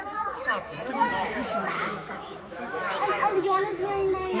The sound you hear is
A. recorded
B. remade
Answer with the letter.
B